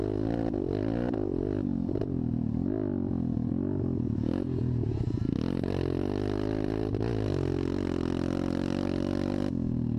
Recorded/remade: recorded